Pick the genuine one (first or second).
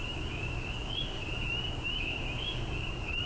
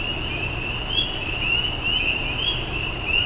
second